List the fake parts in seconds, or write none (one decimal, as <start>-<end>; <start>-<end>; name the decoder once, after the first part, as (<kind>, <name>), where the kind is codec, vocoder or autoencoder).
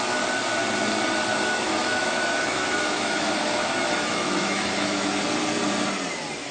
1.3-5.2 (autoencoder, DAC-VAE)